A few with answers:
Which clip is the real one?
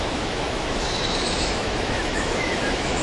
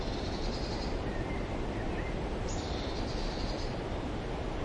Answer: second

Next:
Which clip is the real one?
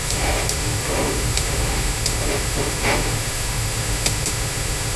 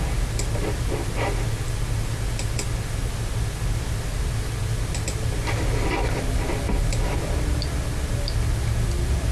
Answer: second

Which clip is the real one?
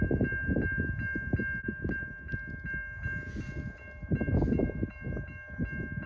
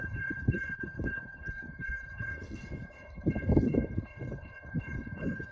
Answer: first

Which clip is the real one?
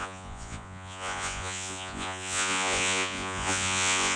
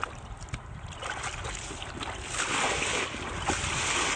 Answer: second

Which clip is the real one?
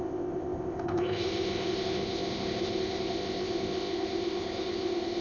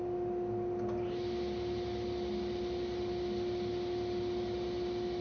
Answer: second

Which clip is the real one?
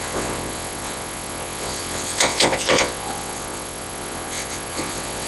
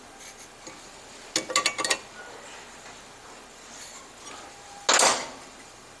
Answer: second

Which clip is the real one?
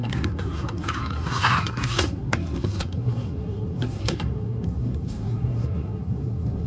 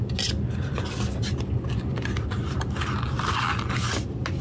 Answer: second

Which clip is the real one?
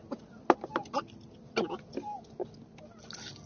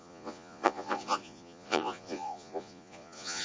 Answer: first